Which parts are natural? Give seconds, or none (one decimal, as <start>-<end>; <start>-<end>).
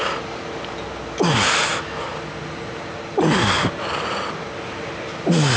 0.0-5.6